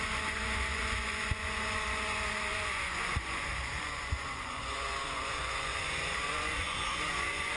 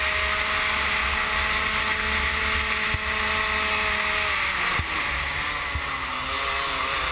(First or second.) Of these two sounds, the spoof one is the first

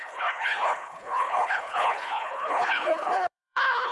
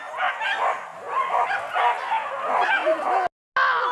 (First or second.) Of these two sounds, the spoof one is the first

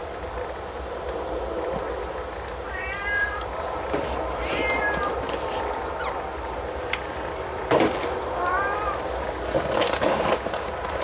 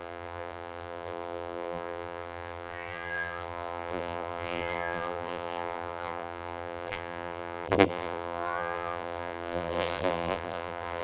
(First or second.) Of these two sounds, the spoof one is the second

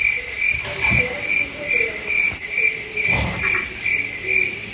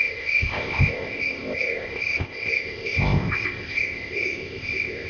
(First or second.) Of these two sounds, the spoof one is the second